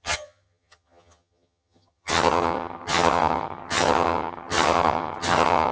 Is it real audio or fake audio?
fake